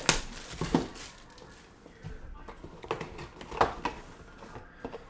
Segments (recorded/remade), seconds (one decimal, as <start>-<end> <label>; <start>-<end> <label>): 0.0-5.1 recorded